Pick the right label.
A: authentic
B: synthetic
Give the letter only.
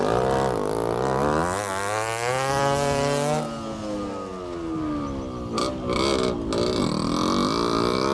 A